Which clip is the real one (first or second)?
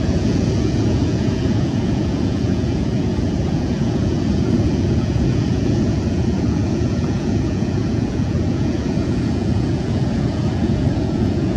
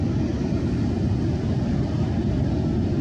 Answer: second